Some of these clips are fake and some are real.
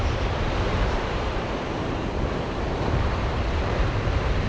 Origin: fake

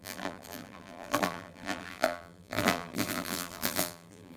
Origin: fake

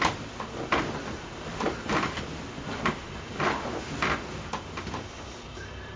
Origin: fake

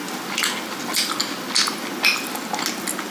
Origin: real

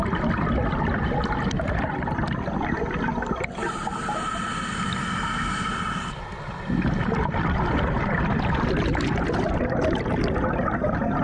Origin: real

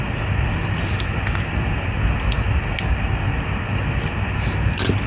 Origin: real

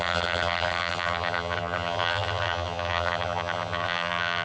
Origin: fake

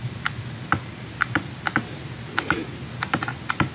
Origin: real